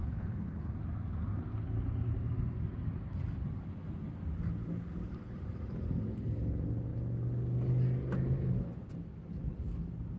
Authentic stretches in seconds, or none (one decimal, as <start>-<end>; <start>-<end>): 0.7-10.2